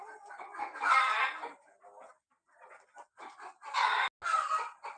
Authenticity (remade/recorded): recorded